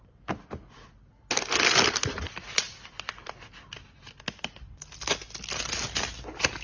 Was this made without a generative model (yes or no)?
yes